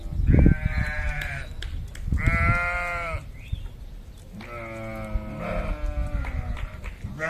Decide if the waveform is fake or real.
real